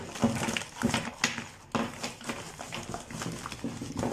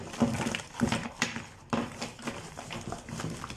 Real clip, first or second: first